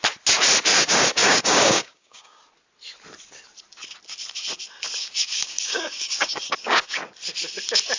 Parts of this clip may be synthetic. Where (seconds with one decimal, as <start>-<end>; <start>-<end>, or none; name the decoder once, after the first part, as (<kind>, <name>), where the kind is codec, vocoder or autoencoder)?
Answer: 1.2-2.4 (codec, DAC); 5.0-7.0